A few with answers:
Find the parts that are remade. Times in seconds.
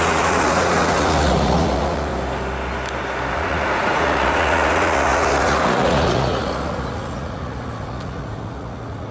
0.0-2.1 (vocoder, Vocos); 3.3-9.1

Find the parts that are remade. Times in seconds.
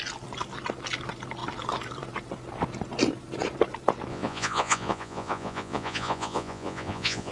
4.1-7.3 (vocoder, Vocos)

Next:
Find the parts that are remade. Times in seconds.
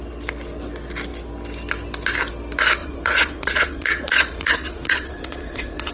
2.8-5.9 (vocoder, Vocos)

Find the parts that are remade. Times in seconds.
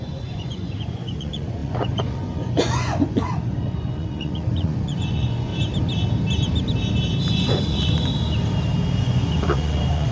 0.0-5.5 (vocoder, Vocos); 7.3-8.1; 9.0-10.1